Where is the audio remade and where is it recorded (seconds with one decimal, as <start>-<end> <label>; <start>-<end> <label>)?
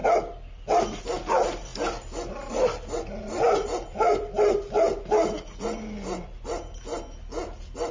0.0-7.9 recorded